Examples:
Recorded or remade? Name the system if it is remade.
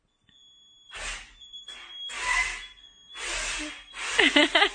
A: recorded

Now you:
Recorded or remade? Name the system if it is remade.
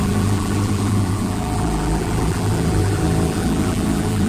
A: remade, vocoder, BigVGAN v2